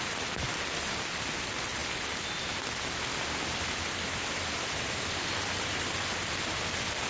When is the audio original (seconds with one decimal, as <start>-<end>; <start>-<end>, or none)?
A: 0.0-7.1